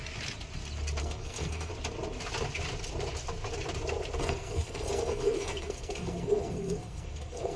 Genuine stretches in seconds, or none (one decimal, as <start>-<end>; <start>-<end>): 0.0-1.0; 1.7-4.2